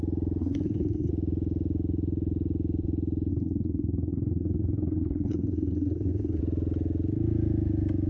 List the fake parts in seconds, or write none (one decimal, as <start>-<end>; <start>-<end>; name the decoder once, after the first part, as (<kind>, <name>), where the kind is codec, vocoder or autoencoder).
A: 0.4-1.1 (codec, SNAC); 3.3-6.4